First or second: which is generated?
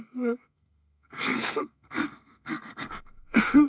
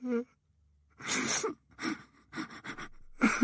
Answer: first